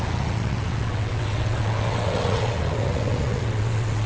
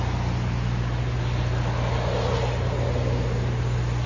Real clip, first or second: second